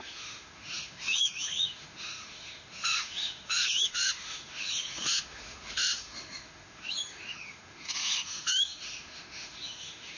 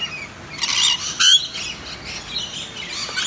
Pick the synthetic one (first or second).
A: first